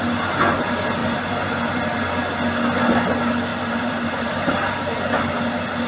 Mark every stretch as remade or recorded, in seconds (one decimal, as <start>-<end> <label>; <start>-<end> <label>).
0.0-1.0 recorded; 1.0-2.0 remade; 2.0-3.5 recorded; 3.5-5.0 remade; 5.0-5.9 recorded